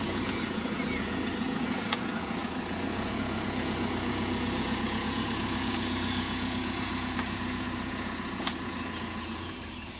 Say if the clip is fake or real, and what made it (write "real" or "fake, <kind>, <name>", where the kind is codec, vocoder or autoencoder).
fake, vocoder, Vocos